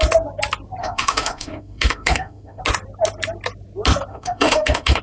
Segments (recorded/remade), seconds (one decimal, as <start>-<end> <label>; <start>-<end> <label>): 0.0-0.8 recorded; 0.8-2.6 remade; 2.6-4.1 recorded; 4.1-5.0 remade